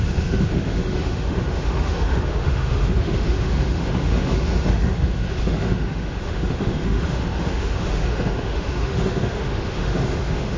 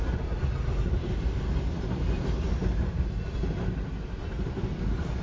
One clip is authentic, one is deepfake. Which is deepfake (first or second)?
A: first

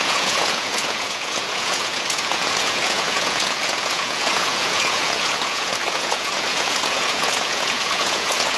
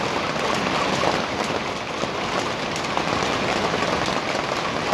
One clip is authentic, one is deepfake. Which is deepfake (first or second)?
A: first